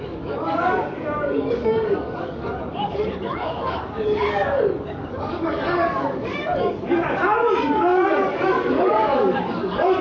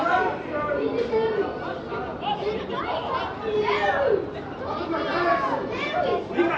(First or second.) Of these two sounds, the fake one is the first